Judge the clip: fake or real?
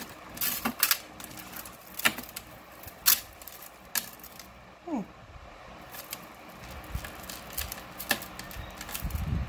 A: real